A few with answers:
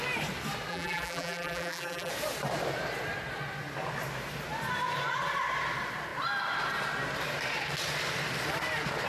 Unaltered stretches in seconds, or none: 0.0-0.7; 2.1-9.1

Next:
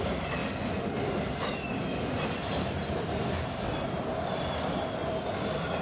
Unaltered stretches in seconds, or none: 0.0-5.8

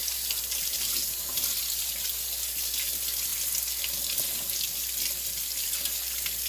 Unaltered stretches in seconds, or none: 0.0-0.6; 1.6-6.5